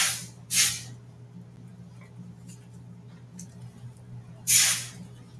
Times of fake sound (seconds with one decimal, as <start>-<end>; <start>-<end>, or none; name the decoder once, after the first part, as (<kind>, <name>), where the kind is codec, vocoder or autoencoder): none